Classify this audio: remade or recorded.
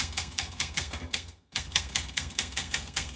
remade